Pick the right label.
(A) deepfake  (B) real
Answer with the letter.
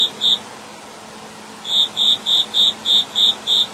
B